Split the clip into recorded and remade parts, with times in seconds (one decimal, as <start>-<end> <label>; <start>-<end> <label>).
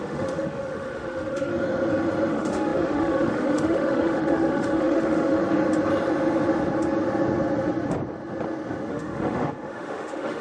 0.0-1.5 remade; 1.5-2.3 recorded; 2.3-5.4 remade; 5.4-8.9 recorded; 8.9-10.4 remade